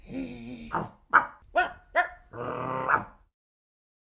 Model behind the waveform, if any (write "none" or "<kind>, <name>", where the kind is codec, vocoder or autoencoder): none